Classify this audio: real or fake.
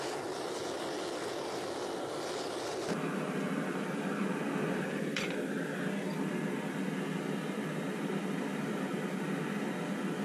real